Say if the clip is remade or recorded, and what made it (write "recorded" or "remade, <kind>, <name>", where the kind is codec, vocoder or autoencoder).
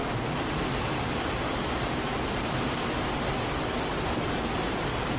remade, vocoder, BigVGAN v2